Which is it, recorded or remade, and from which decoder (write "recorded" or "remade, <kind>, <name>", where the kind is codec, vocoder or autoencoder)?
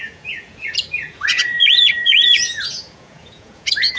remade, vocoder, Vocos